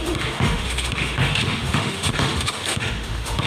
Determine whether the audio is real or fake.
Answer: fake